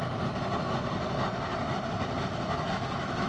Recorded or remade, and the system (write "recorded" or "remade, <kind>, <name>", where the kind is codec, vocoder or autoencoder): recorded